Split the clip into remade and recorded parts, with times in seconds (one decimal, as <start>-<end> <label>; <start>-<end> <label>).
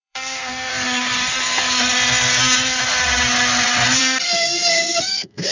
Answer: 0.0-0.7 remade; 0.7-4.0 recorded; 4.0-5.5 remade